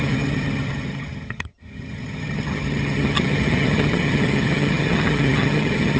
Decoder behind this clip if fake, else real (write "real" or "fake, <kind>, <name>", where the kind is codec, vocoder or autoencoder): fake, vocoder, HiFi-GAN